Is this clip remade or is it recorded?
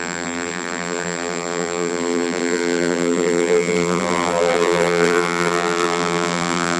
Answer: remade